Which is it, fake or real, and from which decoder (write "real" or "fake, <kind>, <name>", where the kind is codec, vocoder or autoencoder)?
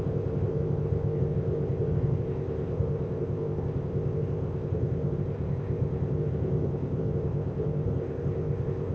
fake, codec, ZipCodec